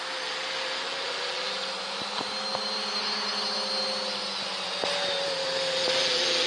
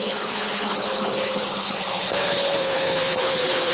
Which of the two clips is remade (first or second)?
second